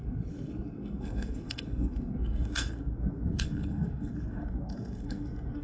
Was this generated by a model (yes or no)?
yes